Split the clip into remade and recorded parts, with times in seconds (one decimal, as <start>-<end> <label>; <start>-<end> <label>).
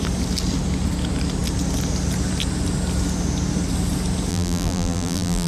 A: 0.0-4.3 recorded; 4.3-5.5 remade